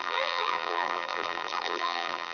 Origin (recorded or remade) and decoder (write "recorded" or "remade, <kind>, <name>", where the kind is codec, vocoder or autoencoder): remade, vocoder, BigVGAN v2